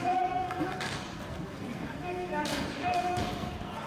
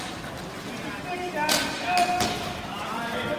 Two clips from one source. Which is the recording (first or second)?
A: second